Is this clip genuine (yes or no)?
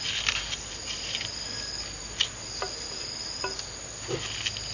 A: yes